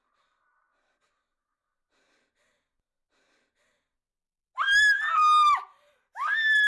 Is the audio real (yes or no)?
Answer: yes